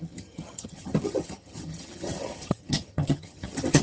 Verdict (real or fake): fake